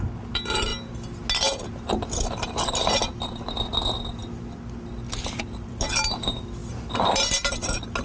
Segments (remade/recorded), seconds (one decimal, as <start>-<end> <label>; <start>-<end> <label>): 0.0-8.0 recorded